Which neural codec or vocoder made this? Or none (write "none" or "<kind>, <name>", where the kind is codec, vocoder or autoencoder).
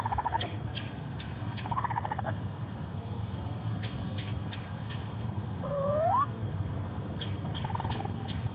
codec, SNAC